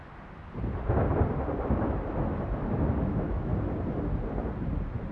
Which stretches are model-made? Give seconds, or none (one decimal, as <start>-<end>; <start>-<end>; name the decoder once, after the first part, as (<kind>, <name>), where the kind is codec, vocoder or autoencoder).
3.1-3.5 (autoencoder, DAC-VAE)